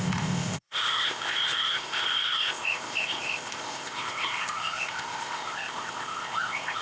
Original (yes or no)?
no